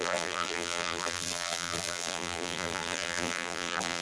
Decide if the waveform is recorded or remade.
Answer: remade